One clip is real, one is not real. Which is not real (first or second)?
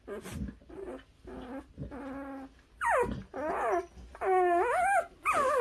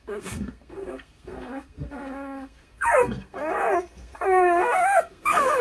second